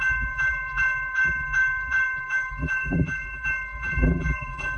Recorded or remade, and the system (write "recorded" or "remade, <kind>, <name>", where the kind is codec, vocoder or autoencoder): remade, vocoder, BigVGAN v2